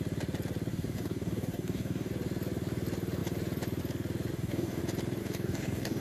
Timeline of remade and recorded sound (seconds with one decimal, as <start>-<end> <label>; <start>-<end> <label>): 0.0-0.7 recorded; 0.7-2.1 remade; 2.1-4.3 recorded; 4.3-4.8 remade; 4.8-5.2 recorded; 5.2-6.0 remade